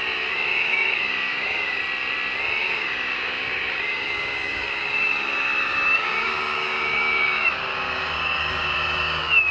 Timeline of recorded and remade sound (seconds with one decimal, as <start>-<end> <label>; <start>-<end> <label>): 0.0-1.8 remade; 1.8-2.6 recorded; 2.6-9.5 remade